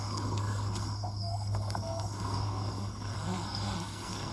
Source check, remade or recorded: remade